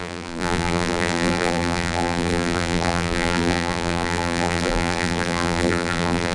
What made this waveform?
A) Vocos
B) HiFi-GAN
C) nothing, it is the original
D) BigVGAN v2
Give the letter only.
D